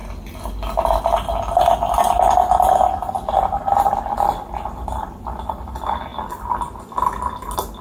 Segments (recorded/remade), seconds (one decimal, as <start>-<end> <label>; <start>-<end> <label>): 0.0-7.8 recorded